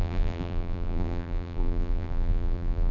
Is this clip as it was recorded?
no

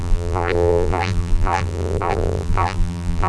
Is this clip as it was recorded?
no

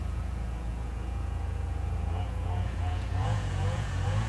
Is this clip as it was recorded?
no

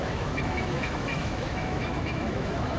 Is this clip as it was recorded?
no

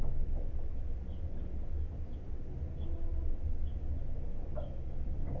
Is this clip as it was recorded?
yes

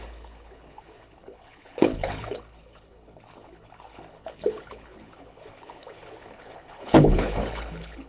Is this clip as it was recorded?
no